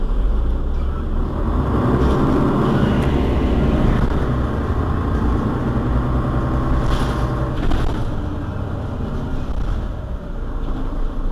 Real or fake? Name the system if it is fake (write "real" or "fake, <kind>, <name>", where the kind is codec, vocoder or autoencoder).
real